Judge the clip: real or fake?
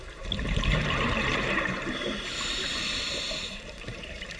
fake